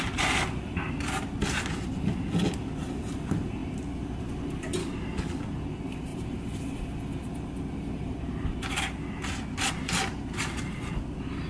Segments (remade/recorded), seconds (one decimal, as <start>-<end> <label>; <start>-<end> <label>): 0.0-4.8 recorded; 4.8-5.4 remade; 5.4-11.5 recorded